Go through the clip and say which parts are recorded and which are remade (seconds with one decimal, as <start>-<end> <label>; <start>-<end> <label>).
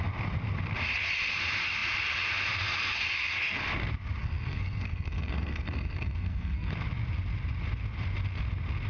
0.0-4.2 recorded; 4.2-6.7 remade; 6.7-8.9 recorded